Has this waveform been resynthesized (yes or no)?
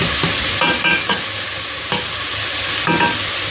no